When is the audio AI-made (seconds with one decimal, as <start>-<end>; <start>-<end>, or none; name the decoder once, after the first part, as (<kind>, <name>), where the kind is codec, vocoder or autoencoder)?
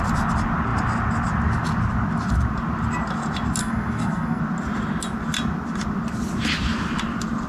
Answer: 3.6-4.4 (codec, SNAC)